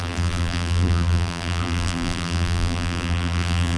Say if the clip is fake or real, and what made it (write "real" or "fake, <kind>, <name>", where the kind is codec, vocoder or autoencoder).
fake, vocoder, BigVGAN v2